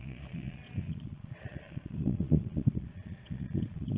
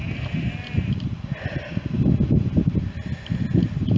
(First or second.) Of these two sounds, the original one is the second